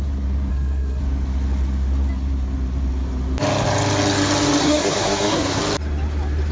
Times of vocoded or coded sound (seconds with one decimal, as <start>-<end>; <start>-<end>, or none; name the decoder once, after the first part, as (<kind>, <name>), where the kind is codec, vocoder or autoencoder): 0.5-1.0 (codec, SNAC); 4.6-5.6